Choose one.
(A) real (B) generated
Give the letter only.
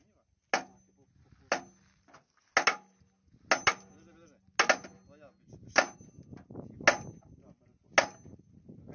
A